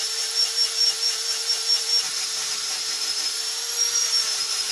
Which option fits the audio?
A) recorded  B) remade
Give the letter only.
B